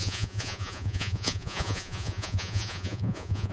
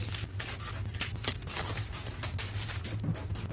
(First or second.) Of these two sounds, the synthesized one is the first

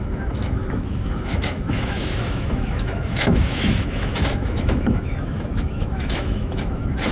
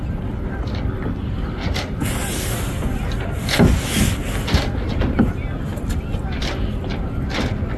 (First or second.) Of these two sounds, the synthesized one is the first